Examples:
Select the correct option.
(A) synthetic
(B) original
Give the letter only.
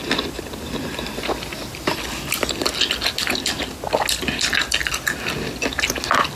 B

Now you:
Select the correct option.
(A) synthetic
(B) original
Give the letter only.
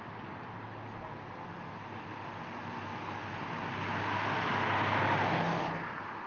B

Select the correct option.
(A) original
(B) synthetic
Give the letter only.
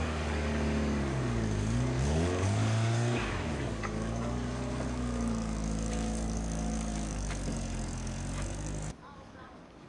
B